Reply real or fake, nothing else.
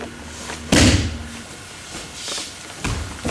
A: real